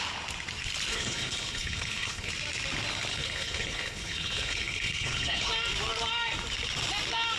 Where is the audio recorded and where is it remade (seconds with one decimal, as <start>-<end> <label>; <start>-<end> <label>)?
0.0-0.9 recorded; 0.9-2.3 remade; 2.3-3.1 recorded; 3.1-5.5 remade; 5.5-7.4 recorded